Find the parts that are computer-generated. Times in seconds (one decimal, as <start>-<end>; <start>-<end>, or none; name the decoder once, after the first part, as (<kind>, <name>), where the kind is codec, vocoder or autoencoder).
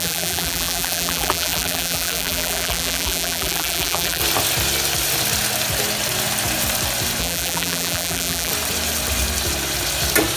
0.0-4.2 (vocoder, BigVGAN v2); 7.2-8.5